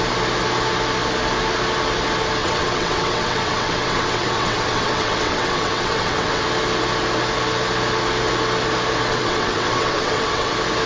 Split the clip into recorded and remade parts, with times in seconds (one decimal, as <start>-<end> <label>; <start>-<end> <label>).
0.0-2.4 recorded; 2.4-6.4 remade; 6.4-9.1 recorded; 9.1-10.5 remade; 10.5-10.9 recorded